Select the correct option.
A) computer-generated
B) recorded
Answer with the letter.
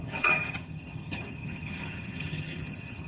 A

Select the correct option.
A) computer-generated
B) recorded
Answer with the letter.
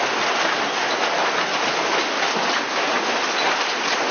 B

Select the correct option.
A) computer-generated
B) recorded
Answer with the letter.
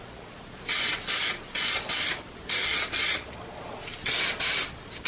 B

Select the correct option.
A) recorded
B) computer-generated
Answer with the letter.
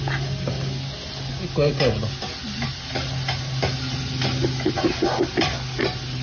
A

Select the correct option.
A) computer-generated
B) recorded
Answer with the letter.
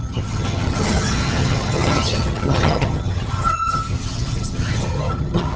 A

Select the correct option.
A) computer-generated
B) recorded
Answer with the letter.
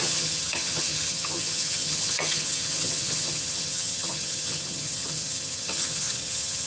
A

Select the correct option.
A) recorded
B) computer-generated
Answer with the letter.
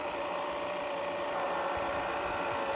A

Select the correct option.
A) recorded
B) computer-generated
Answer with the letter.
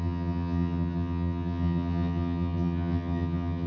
B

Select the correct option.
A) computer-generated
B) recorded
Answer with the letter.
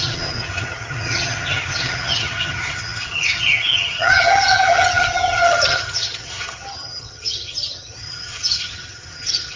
A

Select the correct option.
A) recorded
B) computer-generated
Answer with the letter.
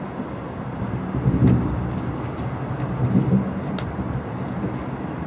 A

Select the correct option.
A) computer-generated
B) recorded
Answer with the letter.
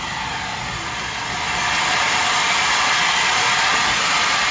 B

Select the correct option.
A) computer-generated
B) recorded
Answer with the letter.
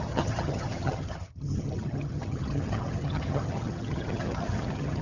A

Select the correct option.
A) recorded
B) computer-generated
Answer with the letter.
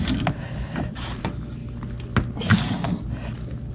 A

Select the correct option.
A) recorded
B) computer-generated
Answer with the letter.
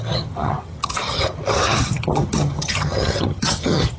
B